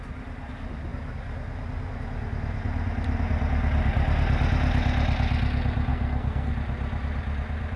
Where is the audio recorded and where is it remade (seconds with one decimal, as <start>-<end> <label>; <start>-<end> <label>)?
0.0-5.9 recorded; 5.9-6.5 remade; 6.5-7.8 recorded